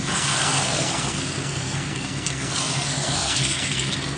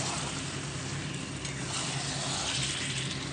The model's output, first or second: first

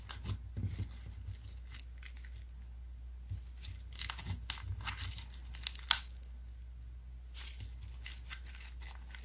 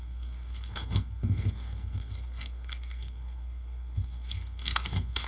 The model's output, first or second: second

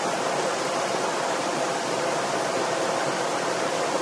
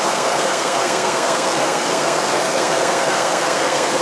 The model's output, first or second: second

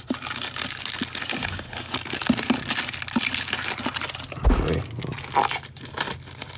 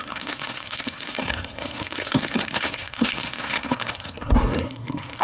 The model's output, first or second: second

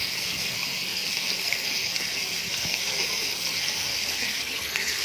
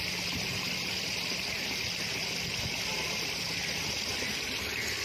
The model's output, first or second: first